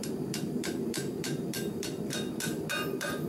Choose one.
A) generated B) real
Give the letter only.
A